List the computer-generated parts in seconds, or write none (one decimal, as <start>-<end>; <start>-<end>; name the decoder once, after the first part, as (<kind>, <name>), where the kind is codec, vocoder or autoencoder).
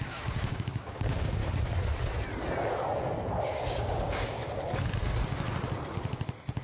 0.0-1.4 (codec, DAC); 3.4-4.4